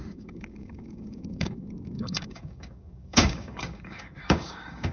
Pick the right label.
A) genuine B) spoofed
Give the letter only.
B